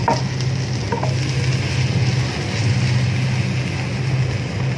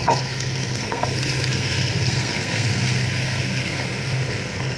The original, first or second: first